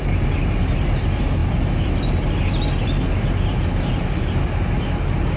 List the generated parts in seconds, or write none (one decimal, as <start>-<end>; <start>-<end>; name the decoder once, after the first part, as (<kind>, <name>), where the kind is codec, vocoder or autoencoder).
none